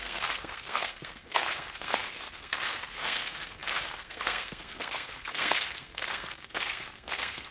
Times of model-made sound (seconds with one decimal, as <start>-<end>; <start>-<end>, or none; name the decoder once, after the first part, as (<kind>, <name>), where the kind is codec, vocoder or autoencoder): 0.0-7.5 (codec, SNAC)